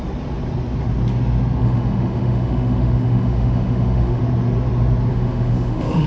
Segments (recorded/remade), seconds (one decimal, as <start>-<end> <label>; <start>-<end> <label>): 0.0-1.6 recorded; 1.6-4.2 remade; 4.2-5.1 recorded; 5.1-6.1 remade